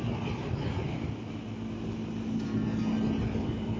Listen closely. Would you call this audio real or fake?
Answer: real